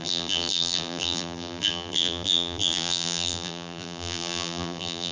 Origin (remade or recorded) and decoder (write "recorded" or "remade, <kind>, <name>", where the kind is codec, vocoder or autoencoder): remade, vocoder, BigVGAN v2